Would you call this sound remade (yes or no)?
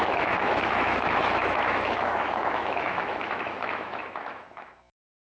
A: yes